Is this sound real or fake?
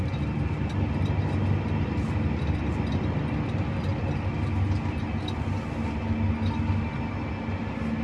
real